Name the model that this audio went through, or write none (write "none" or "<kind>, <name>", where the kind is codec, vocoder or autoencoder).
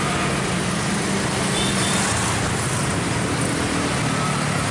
none